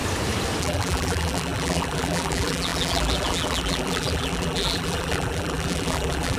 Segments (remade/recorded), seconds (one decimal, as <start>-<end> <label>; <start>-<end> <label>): 0.0-0.6 recorded; 0.6-6.4 remade